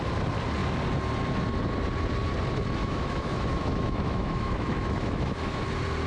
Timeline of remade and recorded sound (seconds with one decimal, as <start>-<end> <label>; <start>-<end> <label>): 0.0-2.8 recorded; 2.8-5.6 remade; 5.6-6.1 recorded